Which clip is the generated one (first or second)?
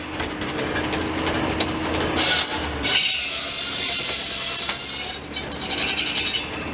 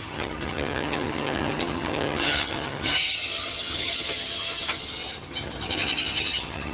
second